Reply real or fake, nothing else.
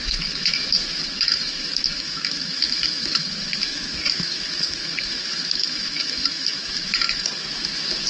fake